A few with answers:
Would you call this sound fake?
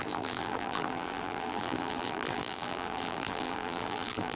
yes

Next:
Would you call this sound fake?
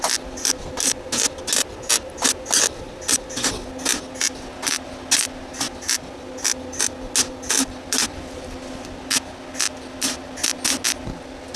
no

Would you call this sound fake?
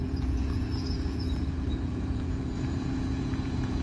yes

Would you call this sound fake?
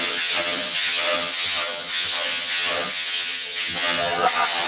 yes